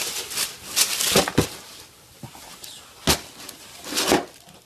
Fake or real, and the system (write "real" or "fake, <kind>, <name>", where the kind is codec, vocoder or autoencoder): real